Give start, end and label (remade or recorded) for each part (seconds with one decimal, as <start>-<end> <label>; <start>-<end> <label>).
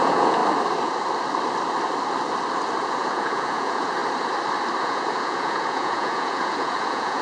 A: 0.0-0.4 remade; 0.4-2.8 recorded; 2.8-4.0 remade; 4.0-4.8 recorded; 4.8-7.2 remade